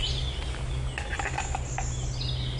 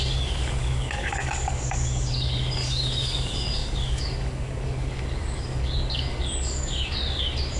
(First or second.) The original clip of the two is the first